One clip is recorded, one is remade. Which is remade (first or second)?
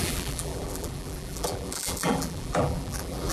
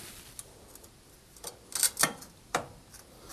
first